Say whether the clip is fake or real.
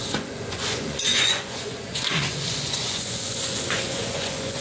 fake